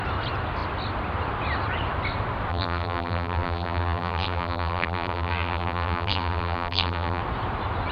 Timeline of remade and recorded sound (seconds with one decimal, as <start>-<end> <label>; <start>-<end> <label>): 0.0-2.5 recorded; 2.5-7.2 remade; 7.2-7.9 recorded

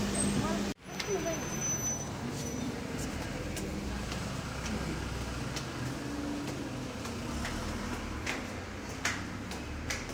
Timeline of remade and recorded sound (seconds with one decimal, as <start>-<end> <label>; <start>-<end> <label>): 0.0-10.1 recorded

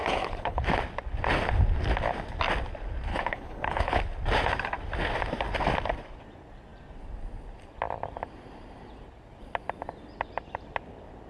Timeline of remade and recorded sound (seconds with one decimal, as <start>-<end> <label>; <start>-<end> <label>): 0.0-0.6 remade; 0.6-3.1 recorded; 3.1-4.0 remade; 4.0-11.3 recorded